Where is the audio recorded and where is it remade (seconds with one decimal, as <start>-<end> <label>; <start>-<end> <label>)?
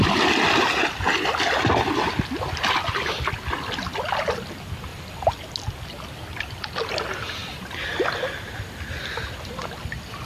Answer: 0.0-10.3 recorded